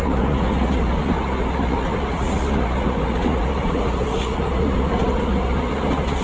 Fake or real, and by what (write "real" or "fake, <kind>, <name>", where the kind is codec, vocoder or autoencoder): fake, vocoder, Vocos